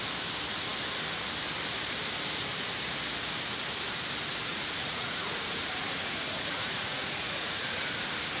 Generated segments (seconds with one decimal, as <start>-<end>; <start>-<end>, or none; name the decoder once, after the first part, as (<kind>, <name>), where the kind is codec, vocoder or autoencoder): 4.5-7.8 (vocoder, Vocos)